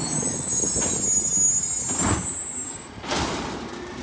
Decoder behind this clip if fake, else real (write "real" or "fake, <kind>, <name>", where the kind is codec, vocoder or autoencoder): real